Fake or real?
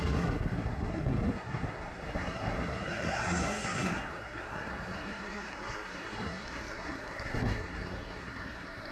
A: fake